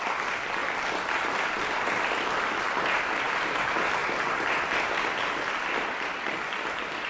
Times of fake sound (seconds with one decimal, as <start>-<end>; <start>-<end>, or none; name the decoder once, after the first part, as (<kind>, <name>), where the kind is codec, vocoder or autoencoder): none